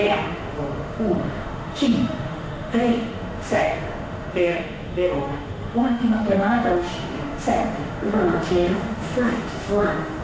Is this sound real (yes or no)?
no